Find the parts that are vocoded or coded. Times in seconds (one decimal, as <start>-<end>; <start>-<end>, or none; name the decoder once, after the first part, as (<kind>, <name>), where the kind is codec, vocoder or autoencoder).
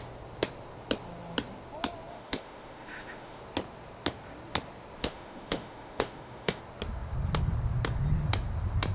2.1-3.4 (autoencoder, DAC-VAE); 5.0-6.6